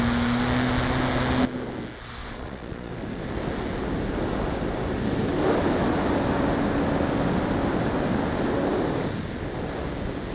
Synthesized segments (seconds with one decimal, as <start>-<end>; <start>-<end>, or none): 2.2-2.9